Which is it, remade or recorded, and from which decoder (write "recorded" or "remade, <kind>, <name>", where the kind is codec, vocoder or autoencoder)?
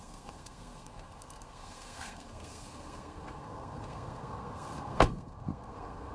remade, codec, SNAC